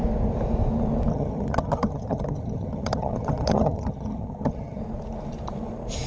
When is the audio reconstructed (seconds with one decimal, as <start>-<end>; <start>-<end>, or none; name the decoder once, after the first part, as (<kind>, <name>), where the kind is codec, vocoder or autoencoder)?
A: 1.1-4.8 (vocoder, HiFi-GAN)